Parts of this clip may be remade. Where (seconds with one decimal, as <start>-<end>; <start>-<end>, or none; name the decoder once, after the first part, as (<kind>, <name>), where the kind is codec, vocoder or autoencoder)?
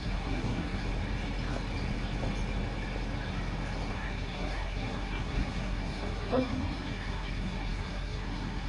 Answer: 0.0-0.8 (codec, SNAC); 3.9-8.7